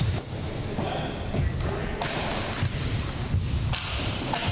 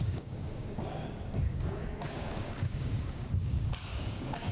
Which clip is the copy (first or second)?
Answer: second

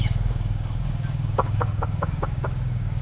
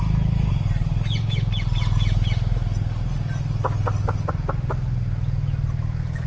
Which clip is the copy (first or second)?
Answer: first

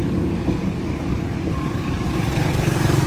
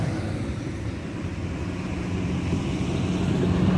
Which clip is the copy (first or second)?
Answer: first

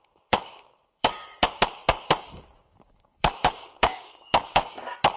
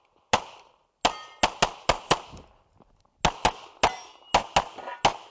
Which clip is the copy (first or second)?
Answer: first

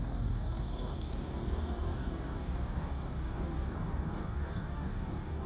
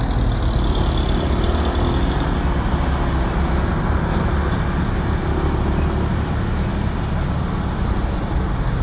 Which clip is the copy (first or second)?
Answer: first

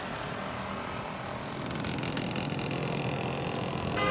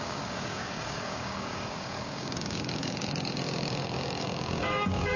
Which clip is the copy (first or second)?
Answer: second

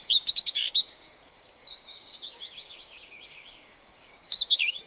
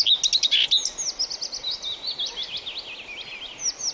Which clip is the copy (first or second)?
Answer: first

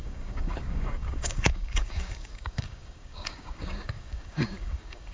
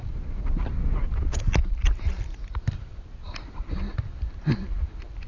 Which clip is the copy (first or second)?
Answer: first